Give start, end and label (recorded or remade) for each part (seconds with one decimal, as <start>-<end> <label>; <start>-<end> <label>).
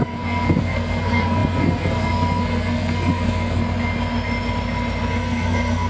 0.0-3.6 remade; 3.6-5.1 recorded; 5.1-5.9 remade